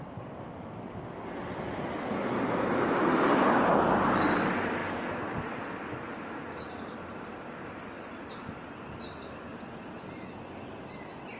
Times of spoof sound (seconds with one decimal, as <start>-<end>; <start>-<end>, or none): none